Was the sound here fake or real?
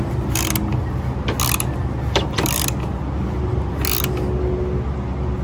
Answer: real